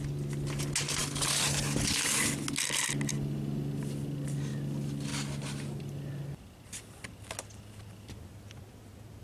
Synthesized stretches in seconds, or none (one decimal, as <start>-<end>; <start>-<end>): none